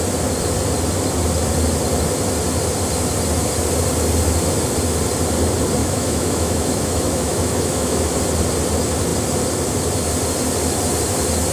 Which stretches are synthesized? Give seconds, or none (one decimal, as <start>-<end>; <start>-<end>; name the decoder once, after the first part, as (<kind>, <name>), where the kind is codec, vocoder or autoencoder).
5.8-8.1 (autoencoder, DAC-VAE)